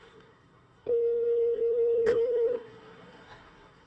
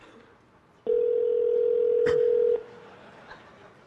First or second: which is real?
second